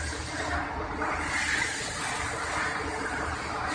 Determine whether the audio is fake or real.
real